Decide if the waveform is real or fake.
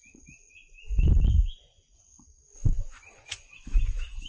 fake